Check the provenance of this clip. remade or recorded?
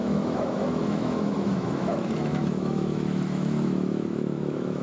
remade